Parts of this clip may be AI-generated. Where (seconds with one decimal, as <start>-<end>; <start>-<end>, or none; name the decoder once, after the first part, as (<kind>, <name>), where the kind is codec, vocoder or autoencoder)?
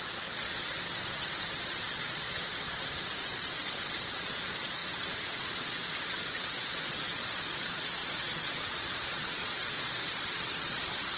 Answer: 0.0-4.8 (vocoder, Vocos); 5.4-11.2